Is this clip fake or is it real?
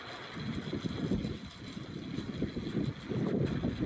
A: real